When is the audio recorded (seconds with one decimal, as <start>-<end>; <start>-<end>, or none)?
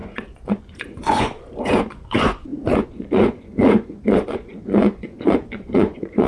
none